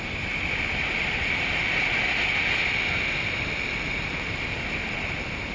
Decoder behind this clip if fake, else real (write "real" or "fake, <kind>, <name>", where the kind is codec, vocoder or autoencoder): real